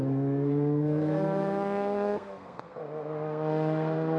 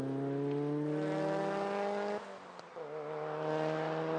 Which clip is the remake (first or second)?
first